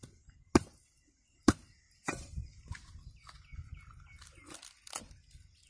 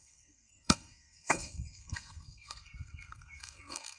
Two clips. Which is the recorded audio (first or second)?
first